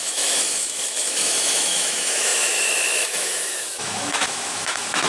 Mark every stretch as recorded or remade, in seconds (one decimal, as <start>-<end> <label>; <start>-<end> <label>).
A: 0.0-5.1 remade